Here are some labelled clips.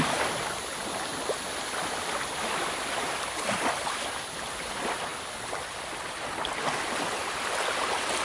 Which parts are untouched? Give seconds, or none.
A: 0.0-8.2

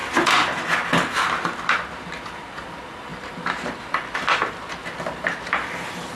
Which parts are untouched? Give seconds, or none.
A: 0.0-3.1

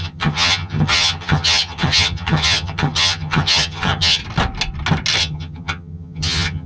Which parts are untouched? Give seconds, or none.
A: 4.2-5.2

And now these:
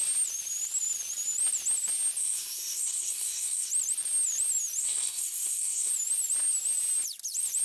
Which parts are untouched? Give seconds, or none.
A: 0.0-2.2; 3.7-4.8; 5.9-7.6

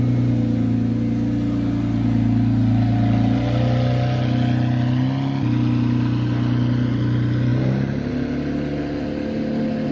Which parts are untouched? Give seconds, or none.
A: 0.0-9.9

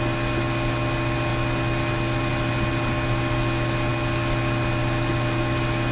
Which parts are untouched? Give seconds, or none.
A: 0.0-5.9

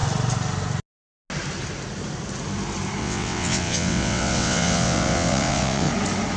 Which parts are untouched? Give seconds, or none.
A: 0.0-3.0; 5.9-6.4

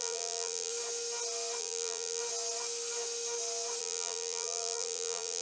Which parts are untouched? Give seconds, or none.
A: 0.7-1.6; 2.2-3.8